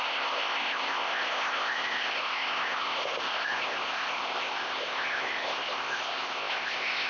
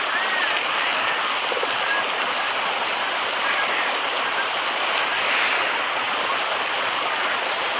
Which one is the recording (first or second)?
second